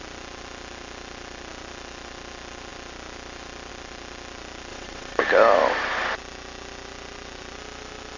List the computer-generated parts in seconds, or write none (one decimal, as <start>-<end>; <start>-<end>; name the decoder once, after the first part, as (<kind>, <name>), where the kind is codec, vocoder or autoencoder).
4.7-5.2 (vocoder, WaveNeXt)